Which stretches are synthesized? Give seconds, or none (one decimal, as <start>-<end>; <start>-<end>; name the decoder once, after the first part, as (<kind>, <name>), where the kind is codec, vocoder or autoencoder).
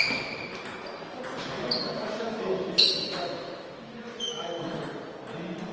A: 1.4-4.8 (autoencoder, DAC-VAE)